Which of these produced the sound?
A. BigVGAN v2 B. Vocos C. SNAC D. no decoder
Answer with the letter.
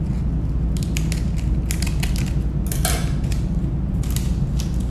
D